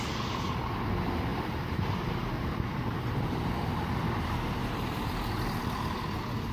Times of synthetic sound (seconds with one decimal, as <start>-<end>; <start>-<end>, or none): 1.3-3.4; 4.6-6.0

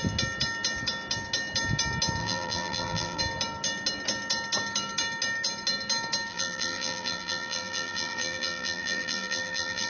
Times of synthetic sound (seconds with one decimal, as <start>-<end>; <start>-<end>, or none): 2.2-3.2; 6.3-9.9

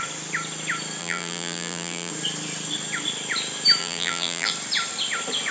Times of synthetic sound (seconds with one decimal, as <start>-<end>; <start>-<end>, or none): 1.0-2.1; 3.8-4.5

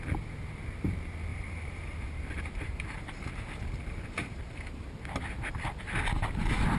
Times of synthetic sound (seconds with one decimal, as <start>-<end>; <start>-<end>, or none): 1.3-4.9

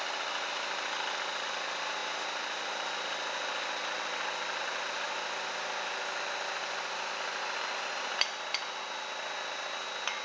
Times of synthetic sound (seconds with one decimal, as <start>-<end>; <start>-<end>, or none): none

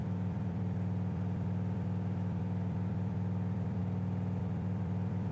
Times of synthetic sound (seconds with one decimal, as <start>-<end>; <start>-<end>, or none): 0.0-3.8; 4.4-5.3